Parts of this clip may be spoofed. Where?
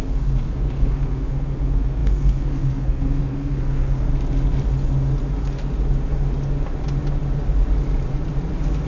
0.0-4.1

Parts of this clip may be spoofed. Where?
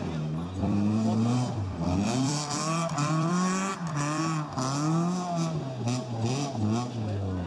0.6-3.3; 3.7-4.2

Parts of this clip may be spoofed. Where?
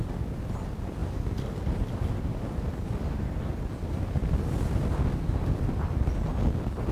none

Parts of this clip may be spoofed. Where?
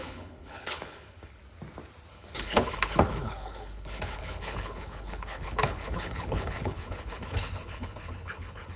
0.0-1.4; 2.1-8.8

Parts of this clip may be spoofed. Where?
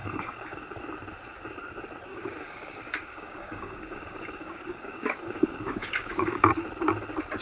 0.0-0.8; 2.1-6.5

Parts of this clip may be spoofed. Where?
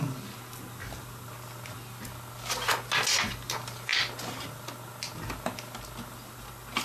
none